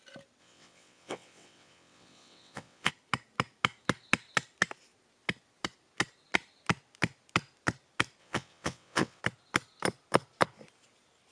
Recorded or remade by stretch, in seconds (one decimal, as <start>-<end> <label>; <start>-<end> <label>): 0.0-0.4 recorded; 0.4-2.9 remade; 2.9-8.2 recorded; 8.2-9.2 remade; 9.2-11.3 recorded